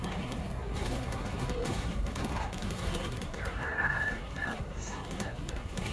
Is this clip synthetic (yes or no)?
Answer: yes